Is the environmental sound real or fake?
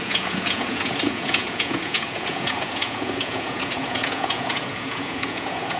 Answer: fake